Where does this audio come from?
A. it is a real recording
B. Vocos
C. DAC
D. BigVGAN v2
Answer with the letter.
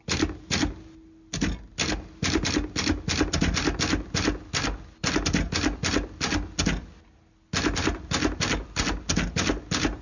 A